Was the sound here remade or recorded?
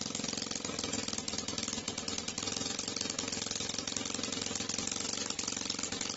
recorded